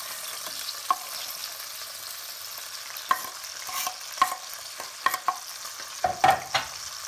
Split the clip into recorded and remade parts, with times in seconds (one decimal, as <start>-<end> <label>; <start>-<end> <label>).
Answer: 0.0-7.1 recorded